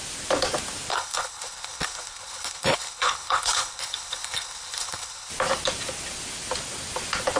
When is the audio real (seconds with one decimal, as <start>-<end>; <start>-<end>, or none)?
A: 0.0-0.9; 5.3-7.4